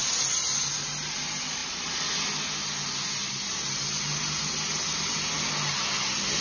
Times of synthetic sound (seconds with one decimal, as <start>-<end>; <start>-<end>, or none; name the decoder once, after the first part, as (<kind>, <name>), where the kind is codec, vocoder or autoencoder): none